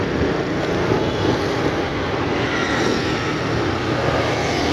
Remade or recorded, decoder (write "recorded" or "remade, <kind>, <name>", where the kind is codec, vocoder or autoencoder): recorded